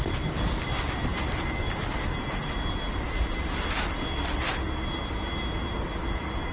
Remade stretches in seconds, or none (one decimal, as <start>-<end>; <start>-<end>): none